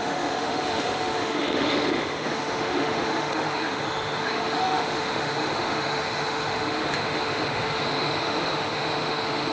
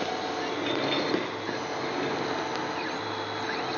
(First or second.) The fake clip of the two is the first